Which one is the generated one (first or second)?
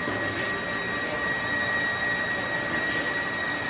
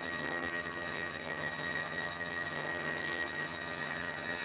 second